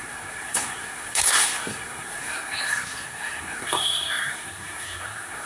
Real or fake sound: fake